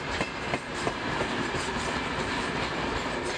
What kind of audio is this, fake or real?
fake